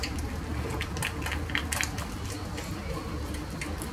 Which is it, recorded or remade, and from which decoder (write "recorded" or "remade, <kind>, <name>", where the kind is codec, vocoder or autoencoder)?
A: recorded